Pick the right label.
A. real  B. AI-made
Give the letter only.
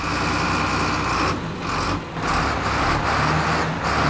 A